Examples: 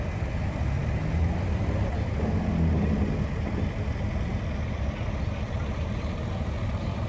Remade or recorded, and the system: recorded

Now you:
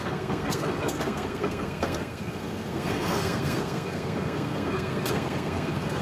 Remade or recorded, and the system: remade, codec, SNAC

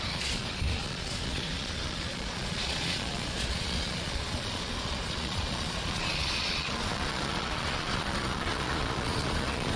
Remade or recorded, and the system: remade, vocoder, Vocos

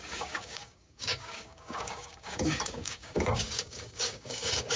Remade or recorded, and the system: remade, codec, DAC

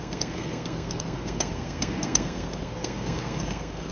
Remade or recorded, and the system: remade, codec, SNAC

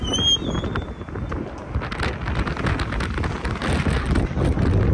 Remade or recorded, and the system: recorded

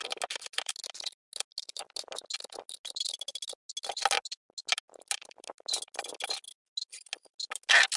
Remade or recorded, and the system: recorded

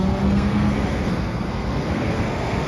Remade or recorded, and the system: remade, codec, SNAC